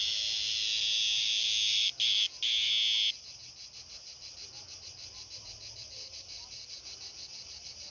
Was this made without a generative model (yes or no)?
yes